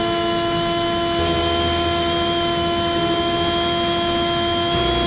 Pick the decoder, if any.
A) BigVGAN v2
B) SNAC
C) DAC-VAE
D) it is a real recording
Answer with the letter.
D